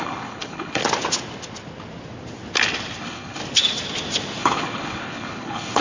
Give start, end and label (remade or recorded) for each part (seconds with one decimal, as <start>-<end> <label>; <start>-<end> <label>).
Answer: 0.0-0.8 remade; 0.8-3.0 recorded; 3.0-3.4 remade; 3.4-4.4 recorded; 4.4-5.8 remade